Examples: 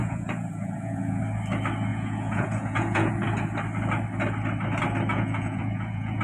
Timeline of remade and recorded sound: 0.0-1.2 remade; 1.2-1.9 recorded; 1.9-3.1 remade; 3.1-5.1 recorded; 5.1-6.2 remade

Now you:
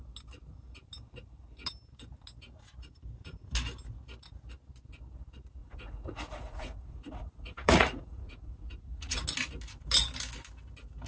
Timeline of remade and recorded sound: 0.0-5.6 recorded; 5.6-9.2 remade; 9.2-11.1 recorded

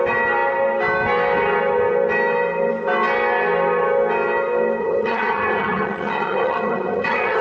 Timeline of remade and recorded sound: 0.0-4.8 recorded; 4.8-7.4 remade

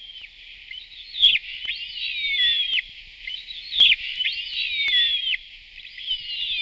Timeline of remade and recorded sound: 0.0-6.6 recorded

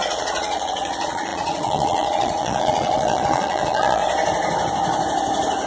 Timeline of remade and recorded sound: 0.0-4.0 remade; 4.0-5.7 recorded

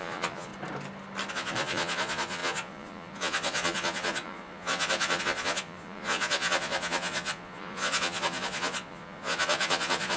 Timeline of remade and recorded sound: 0.0-0.5 remade; 0.5-1.3 recorded; 1.3-10.2 remade

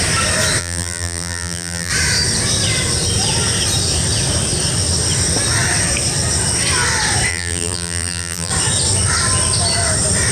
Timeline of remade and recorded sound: 0.0-0.6 recorded; 0.6-1.9 remade; 1.9-7.3 recorded; 7.3-8.5 remade; 8.5-10.3 recorded

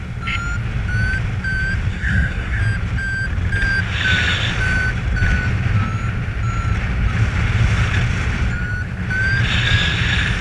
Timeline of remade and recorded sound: 0.0-1.9 recorded; 1.9-2.6 remade; 2.6-10.4 recorded